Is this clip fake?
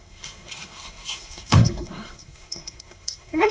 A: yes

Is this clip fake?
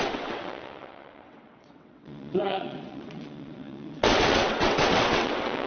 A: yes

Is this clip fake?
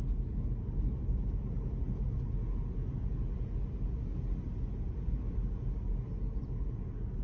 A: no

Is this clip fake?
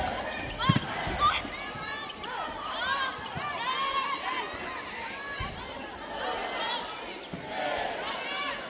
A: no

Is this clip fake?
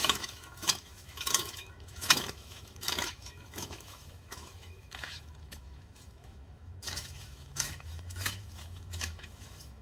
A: yes